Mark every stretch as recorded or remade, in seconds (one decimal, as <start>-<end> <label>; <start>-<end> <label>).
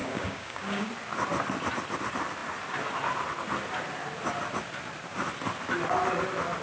0.0-0.9 remade; 0.9-6.6 recorded